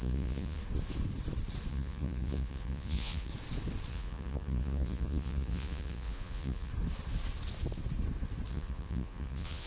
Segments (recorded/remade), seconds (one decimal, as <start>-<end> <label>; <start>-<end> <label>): 0.0-0.6 remade; 0.6-1.7 recorded; 1.7-3.3 remade; 3.3-3.9 recorded; 3.9-6.7 remade; 6.7-8.5 recorded; 8.5-9.7 remade